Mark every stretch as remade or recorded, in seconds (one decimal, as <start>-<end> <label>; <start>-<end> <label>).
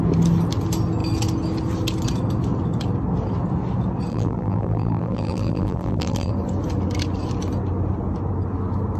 0.0-4.1 recorded; 4.1-6.3 remade; 6.3-9.0 recorded